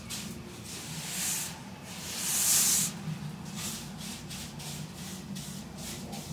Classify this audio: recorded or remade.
recorded